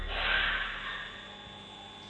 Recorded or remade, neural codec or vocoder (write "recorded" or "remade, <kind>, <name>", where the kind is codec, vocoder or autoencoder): recorded